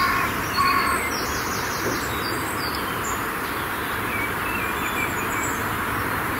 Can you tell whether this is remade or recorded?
remade